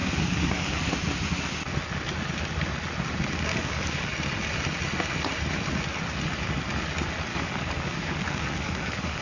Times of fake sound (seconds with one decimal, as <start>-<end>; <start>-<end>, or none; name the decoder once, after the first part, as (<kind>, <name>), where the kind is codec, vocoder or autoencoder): 0.0-0.8 (codec, DAC); 3.5-4.1; 7.3-9.2